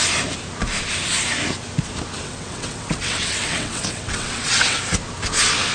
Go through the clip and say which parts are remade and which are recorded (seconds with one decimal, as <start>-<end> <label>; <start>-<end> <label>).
0.0-2.2 recorded; 2.2-4.8 remade; 4.8-5.7 recorded